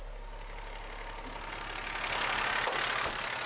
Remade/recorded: recorded